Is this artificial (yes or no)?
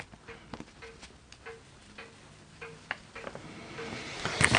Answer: no